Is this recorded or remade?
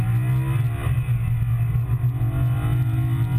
recorded